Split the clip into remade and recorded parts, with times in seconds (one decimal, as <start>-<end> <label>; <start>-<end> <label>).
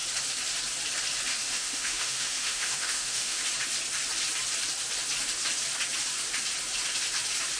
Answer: 0.0-1.4 recorded; 1.4-3.4 remade; 3.4-7.6 recorded